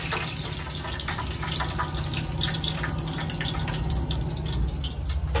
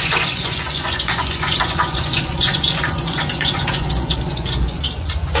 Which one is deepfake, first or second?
second